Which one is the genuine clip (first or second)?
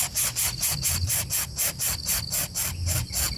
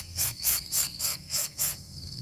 first